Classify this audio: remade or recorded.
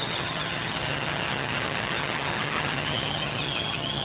remade